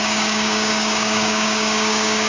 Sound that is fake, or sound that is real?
fake